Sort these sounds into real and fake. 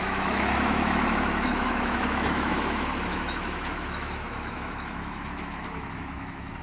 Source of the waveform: fake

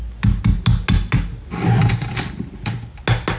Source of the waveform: real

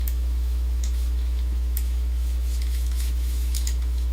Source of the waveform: fake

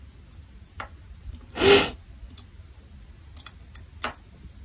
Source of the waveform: real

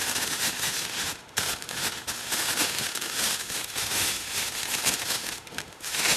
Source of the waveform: fake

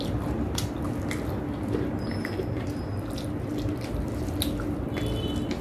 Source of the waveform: real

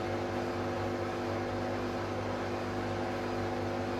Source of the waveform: real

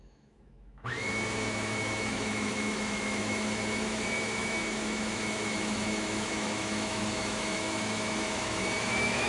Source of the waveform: fake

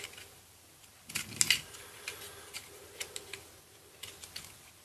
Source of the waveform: real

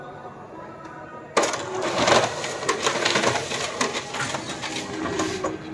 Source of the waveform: real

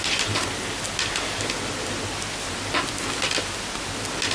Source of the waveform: real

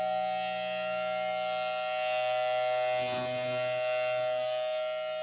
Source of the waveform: real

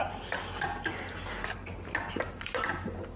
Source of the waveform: real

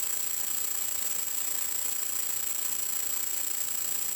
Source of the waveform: real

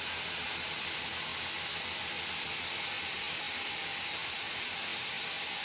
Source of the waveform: real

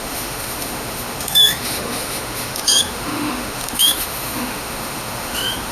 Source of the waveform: fake